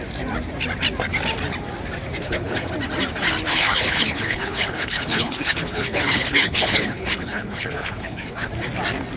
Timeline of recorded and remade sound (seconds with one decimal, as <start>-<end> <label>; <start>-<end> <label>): 0.0-2.2 recorded; 2.2-2.7 remade; 2.7-3.5 recorded; 3.5-8.5 remade; 8.5-9.2 recorded